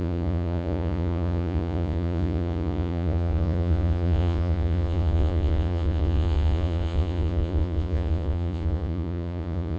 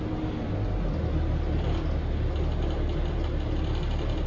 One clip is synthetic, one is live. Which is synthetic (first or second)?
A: first